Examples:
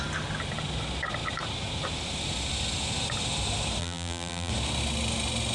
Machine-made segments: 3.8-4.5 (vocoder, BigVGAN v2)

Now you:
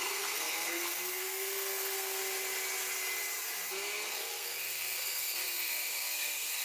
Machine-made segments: 0.0-2.2 (codec, SNAC); 4.1-6.6

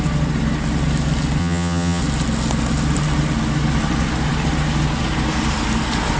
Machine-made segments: 1.4-2.0 (vocoder, HiFi-GAN)

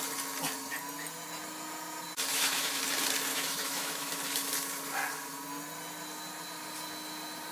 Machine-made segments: 2.3-2.8 (autoencoder, DAC-VAE); 3.3-4.1

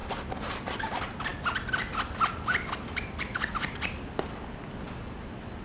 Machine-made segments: 0.0-0.8 (vocoder, BigVGAN v2)

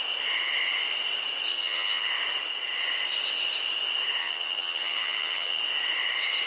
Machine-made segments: 1.5-2.1 (vocoder, HiFi-GAN); 4.2-5.6